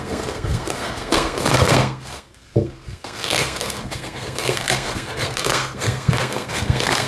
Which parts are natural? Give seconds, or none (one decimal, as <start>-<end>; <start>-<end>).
none